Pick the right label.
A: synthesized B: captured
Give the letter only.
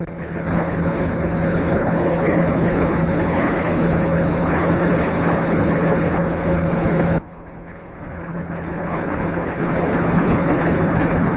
A